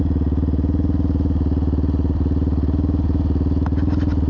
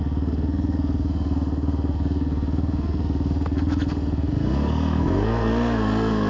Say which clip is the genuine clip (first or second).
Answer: first